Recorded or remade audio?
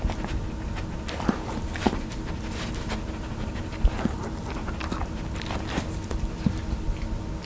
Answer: recorded